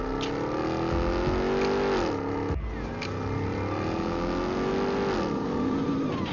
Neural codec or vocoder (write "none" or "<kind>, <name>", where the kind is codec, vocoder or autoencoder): none